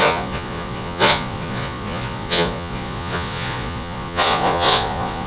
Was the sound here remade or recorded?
remade